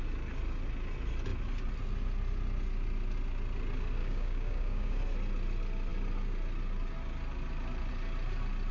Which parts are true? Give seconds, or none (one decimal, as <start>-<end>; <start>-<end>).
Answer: 0.0-4.0; 5.0-8.7